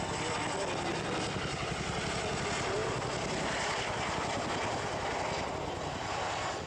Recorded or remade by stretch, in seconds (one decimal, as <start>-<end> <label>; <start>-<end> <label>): 0.0-6.7 recorded